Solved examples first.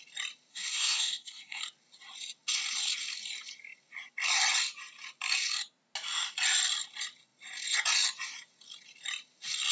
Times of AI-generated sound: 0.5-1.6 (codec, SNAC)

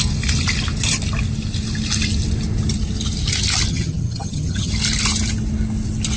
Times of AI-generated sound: 3.7-4.7 (vocoder, HiFi-GAN)

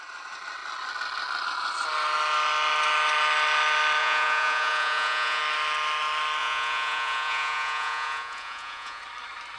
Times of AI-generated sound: 4.0-5.4 (vocoder, Vocos); 6.4-9.0